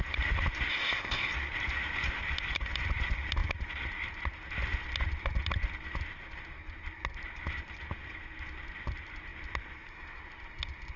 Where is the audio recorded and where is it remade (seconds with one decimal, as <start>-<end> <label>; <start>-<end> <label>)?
0.0-0.7 recorded; 0.7-1.3 remade; 1.3-11.0 recorded